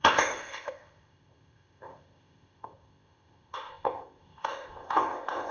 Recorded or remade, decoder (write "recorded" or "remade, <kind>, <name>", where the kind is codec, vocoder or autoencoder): remade, codec, ZipCodec